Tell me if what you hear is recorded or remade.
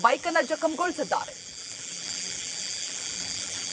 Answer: remade